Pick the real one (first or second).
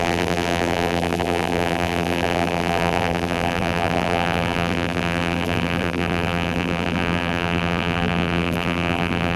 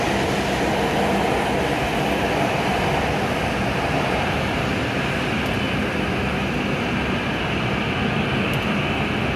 second